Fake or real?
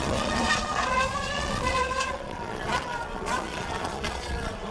fake